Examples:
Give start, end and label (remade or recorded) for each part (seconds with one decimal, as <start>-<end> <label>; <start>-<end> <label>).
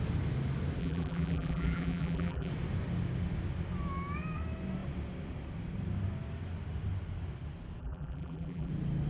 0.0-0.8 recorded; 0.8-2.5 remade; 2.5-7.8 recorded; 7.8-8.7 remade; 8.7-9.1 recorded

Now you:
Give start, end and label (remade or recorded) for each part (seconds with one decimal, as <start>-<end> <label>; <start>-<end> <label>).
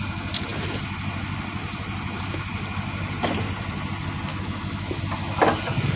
0.0-4.3 recorded; 4.3-5.0 remade; 5.0-6.0 recorded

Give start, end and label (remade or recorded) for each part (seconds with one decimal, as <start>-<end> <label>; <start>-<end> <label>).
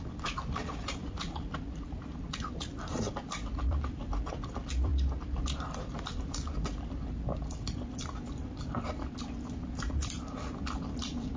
0.0-4.9 remade; 4.9-5.4 recorded; 5.4-11.4 remade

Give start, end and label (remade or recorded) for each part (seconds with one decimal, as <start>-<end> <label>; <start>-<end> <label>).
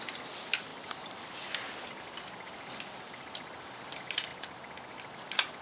0.0-5.6 recorded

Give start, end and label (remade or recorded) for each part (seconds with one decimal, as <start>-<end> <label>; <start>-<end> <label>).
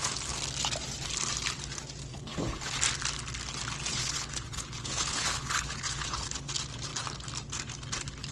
0.0-2.1 recorded; 2.1-2.7 remade; 2.7-3.9 recorded; 3.9-6.5 remade; 6.5-8.3 recorded